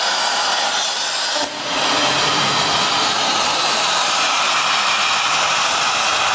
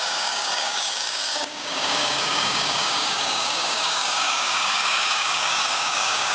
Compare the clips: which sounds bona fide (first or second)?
first